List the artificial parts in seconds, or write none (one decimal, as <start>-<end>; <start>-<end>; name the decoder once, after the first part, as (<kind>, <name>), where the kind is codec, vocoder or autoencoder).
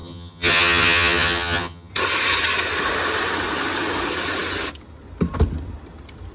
0.0-1.9 (vocoder, HiFi-GAN)